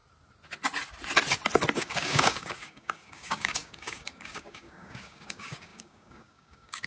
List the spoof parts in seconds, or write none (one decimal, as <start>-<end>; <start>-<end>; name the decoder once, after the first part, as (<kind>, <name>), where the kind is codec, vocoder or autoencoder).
1.8-6.9 (codec, DAC)